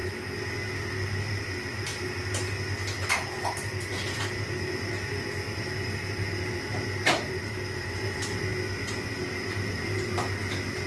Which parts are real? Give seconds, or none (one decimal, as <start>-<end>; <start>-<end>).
0.0-0.9; 1.9-3.1; 8.5-9.5